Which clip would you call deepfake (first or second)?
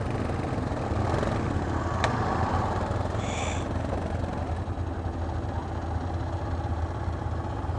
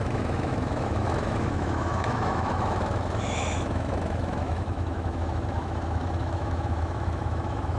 second